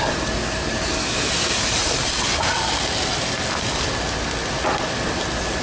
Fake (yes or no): no